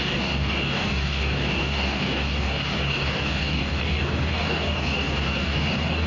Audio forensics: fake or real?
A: fake